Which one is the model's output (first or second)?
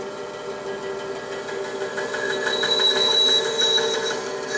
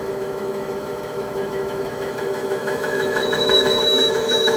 second